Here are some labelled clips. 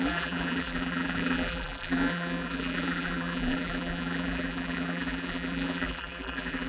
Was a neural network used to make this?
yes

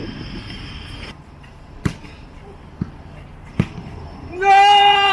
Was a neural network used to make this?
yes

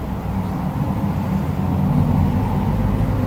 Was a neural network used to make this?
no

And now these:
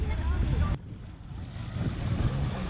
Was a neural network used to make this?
yes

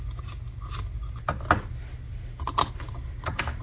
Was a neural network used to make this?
no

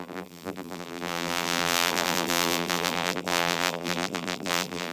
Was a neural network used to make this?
yes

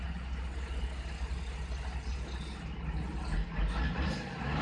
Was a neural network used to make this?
no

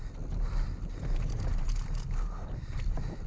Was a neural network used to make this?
no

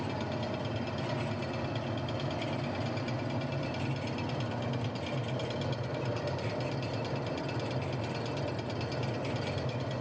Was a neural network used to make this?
no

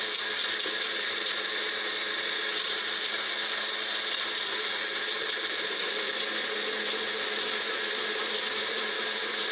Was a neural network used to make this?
no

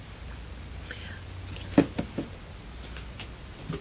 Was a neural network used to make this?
no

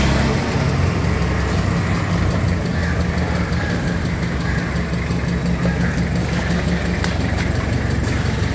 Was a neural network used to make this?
no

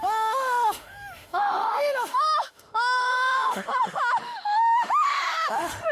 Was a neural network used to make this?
yes